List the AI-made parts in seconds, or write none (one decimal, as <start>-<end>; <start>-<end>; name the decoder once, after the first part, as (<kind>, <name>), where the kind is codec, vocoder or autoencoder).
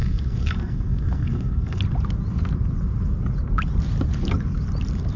0.0-1.8 (codec, SNAC)